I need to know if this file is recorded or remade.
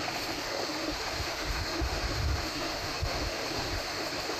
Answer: remade